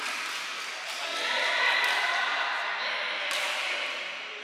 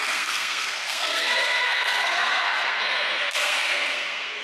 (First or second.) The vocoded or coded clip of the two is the second